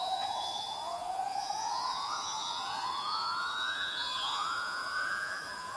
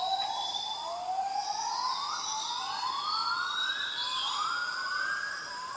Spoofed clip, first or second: first